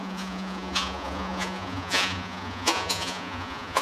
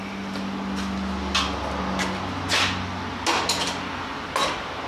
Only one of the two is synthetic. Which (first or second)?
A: first